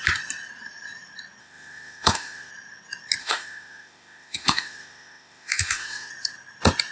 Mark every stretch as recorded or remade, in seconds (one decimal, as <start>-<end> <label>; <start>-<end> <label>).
0.0-1.4 recorded; 1.4-2.5 remade; 2.5-3.2 recorded; 3.2-6.1 remade; 6.1-6.9 recorded